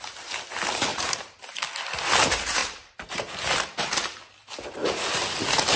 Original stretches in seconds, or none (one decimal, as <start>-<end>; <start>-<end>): 0.0-0.9; 1.6-2.6; 3.1-5.8